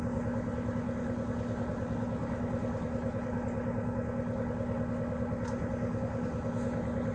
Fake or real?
real